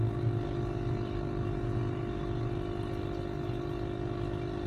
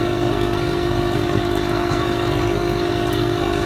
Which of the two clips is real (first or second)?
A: first